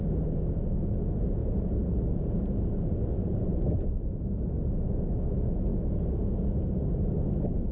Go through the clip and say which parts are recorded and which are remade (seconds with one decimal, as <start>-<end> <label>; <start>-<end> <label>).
0.0-1.4 recorded; 1.4-4.1 remade; 4.1-7.7 recorded